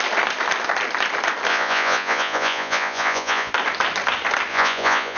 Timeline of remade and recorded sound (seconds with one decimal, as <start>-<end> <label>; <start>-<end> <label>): 0.0-1.5 recorded; 1.5-3.5 remade; 3.5-4.5 recorded; 4.5-5.2 remade

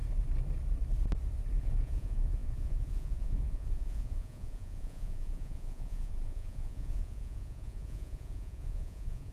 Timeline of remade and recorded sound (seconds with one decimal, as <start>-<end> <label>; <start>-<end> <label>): 0.0-1.6 recorded; 1.6-9.3 remade

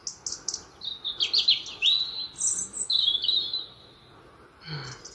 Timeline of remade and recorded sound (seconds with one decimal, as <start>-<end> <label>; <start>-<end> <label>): 0.0-5.1 recorded

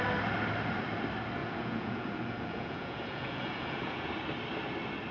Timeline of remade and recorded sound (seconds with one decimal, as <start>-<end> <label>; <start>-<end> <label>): 0.0-1.4 recorded; 1.4-4.1 remade; 4.1-5.1 recorded

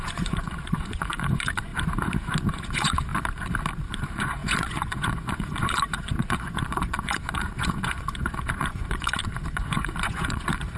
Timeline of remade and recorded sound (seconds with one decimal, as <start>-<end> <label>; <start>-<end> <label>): 0.0-1.7 remade; 1.7-2.5 recorded; 2.5-3.1 remade; 3.1-3.9 recorded; 3.9-10.8 remade

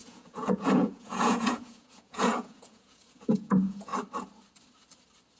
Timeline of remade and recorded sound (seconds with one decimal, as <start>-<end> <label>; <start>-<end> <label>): 0.0-3.9 remade; 3.9-5.4 recorded